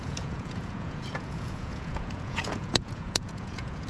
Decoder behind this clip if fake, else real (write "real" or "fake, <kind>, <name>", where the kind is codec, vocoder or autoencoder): fake, vocoder, Vocos